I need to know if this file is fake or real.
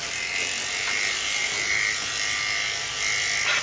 real